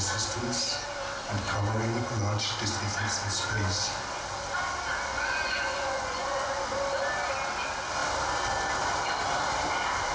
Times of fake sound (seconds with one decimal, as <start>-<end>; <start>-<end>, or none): 5.1-6.6

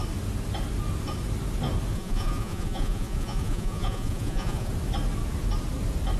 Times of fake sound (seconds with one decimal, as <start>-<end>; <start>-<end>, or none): 1.9-4.7

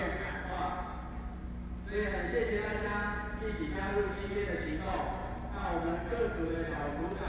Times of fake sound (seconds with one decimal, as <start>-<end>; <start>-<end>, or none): none

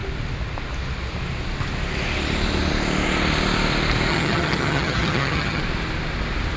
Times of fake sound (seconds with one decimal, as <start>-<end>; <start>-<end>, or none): 4.1-5.6

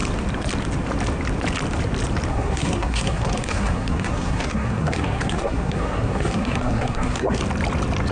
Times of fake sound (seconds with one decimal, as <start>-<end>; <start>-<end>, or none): 2.3-7.4

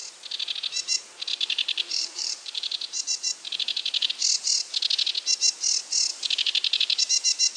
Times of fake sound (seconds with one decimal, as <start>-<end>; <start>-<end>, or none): 1.3-4.1; 6.1-7.0

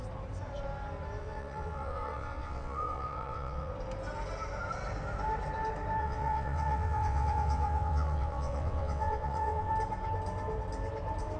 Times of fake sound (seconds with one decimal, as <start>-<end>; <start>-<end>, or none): 1.2-3.7; 6.0-9.7

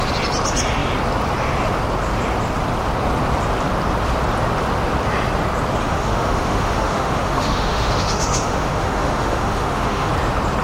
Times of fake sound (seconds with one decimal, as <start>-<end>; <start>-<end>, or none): 5.8-10.1